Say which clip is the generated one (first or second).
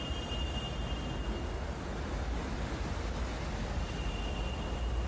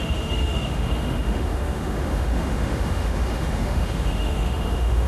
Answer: second